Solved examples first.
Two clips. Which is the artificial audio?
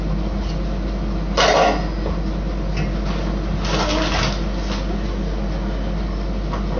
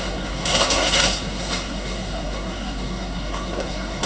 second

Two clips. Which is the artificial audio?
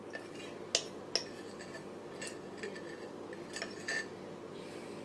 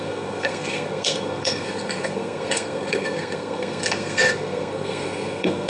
second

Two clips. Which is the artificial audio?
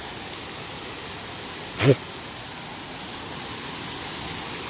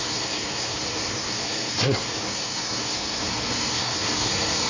second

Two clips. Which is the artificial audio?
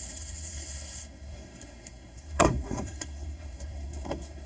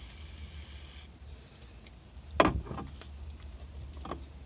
first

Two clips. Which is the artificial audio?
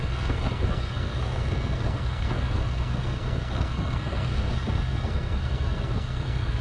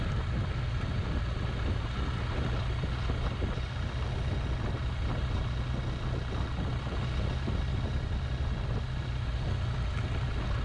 first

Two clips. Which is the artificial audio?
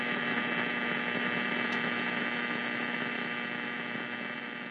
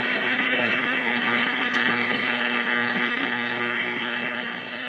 second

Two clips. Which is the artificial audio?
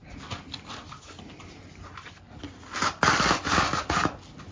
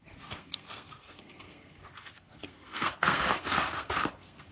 second